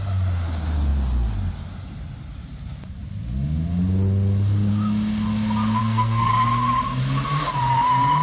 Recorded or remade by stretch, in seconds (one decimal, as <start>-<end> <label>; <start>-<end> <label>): 0.0-5.8 recorded; 5.8-6.3 remade; 6.3-8.2 recorded